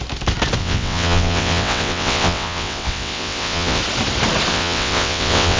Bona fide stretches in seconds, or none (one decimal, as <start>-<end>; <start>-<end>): 0.0-0.6; 3.8-4.5